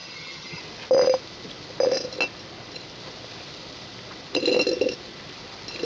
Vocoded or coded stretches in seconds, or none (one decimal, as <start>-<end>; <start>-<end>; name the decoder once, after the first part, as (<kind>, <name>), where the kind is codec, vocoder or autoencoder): 0.0-0.6 (vocoder, HiFi-GAN)